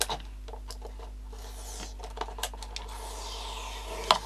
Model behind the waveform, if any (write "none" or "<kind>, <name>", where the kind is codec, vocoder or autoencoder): none